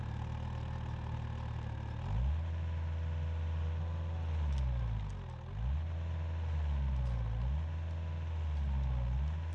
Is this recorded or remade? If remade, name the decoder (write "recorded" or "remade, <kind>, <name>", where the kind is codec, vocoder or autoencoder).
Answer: recorded